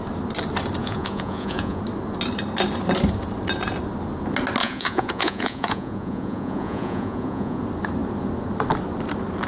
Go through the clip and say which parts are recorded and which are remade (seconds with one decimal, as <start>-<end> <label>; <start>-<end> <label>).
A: 0.0-0.8 recorded; 0.8-1.8 remade; 1.8-4.6 recorded; 4.6-7.6 remade; 7.6-9.5 recorded